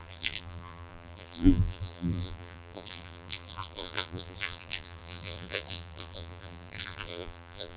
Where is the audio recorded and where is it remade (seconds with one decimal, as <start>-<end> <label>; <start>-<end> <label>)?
0.0-7.8 remade